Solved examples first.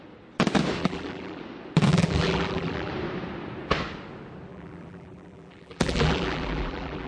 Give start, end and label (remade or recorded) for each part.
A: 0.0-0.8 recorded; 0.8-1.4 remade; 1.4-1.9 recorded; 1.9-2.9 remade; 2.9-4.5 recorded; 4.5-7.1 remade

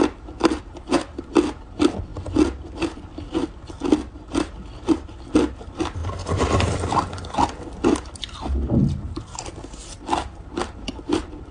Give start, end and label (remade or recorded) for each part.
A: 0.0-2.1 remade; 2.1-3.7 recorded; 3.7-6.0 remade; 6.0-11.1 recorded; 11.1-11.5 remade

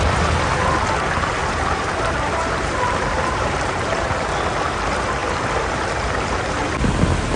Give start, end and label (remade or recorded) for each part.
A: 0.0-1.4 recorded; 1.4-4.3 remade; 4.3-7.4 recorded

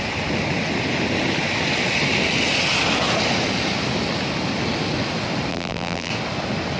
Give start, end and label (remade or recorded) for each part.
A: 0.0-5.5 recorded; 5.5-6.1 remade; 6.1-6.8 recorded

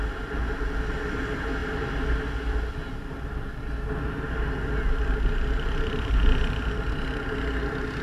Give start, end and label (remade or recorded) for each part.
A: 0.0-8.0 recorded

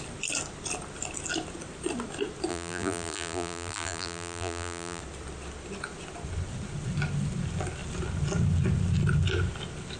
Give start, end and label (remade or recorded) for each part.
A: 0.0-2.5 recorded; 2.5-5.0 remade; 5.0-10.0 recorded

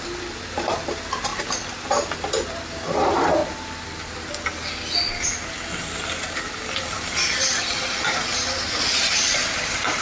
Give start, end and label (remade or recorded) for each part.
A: 0.0-1.3 remade; 1.3-2.3 recorded; 2.3-3.4 remade; 3.4-5.7 recorded; 5.7-10.0 remade